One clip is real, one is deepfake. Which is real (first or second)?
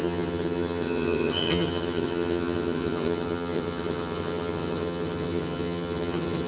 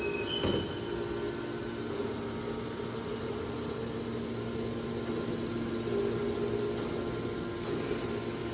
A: second